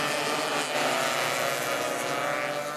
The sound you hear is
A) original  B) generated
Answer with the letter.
A